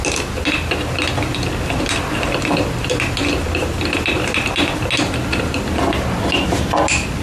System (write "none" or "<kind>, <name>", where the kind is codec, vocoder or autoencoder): none